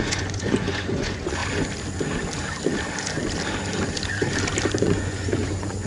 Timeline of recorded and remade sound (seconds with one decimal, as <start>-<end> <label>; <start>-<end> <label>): 0.0-1.4 remade; 1.4-4.8 recorded; 4.8-5.9 remade